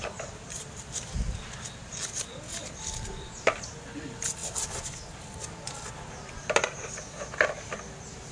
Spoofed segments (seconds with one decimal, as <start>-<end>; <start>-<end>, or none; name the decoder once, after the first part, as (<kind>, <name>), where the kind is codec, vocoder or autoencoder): none